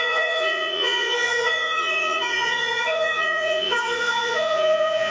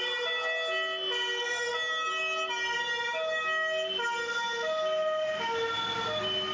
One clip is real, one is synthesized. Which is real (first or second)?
second